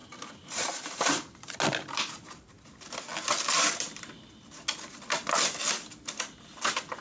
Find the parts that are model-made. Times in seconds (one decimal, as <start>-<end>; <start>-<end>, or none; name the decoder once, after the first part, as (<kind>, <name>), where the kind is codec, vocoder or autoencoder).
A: 0.0-1.5 (vocoder, BigVGAN v2)